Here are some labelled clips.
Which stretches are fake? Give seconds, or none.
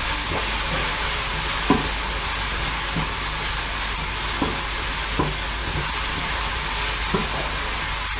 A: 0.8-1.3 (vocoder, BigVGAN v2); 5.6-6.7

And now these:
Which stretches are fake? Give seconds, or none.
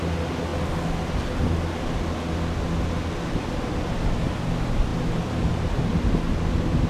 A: none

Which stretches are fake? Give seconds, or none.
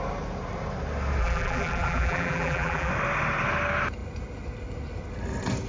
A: 1.2-2.9 (vocoder, BigVGAN v2)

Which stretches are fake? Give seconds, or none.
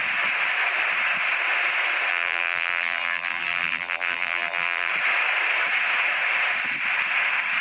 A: 2.1-4.9 (vocoder, BigVGAN v2)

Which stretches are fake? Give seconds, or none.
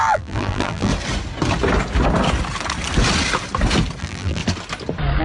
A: 0.0-0.9 (vocoder, BigVGAN v2); 4.0-4.4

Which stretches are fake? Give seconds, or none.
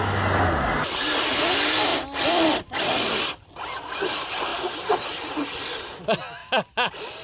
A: 1.9-2.9 (vocoder, BigVGAN v2)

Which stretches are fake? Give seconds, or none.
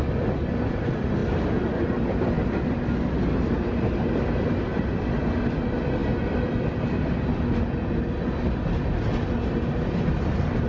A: none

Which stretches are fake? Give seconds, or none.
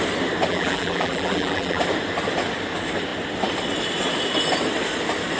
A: 0.5-1.8 (vocoder, BigVGAN v2)